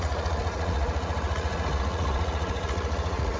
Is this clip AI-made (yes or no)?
yes